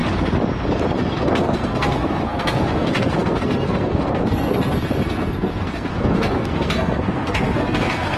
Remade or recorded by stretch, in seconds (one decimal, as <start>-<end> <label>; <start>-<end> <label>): 0.0-1.1 recorded; 1.1-8.2 remade